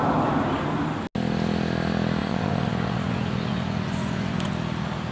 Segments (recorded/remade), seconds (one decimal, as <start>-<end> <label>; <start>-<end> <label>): 0.0-2.2 recorded; 2.2-4.5 remade; 4.5-5.1 recorded